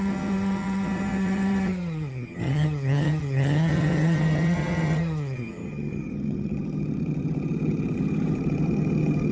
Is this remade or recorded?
remade